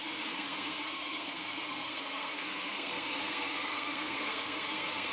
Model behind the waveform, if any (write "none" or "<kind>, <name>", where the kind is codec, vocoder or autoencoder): codec, SNAC